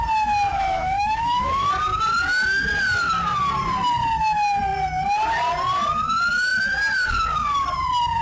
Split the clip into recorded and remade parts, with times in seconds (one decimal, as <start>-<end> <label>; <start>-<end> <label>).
0.0-0.5 recorded; 0.5-1.7 remade; 1.7-8.2 recorded